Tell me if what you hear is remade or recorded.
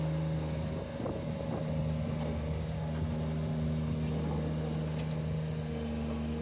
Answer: recorded